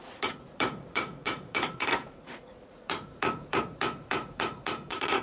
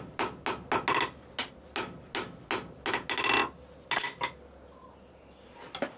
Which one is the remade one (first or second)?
first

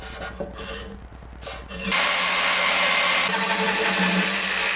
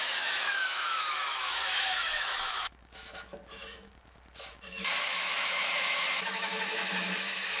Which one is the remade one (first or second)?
second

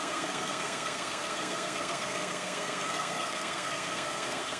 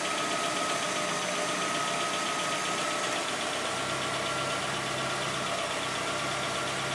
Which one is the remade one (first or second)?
first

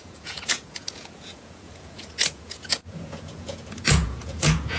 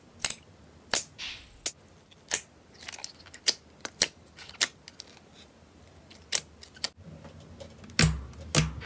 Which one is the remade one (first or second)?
first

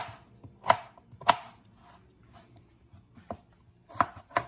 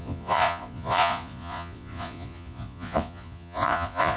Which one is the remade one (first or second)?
second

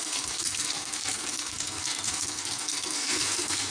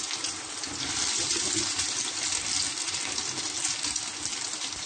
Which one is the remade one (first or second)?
first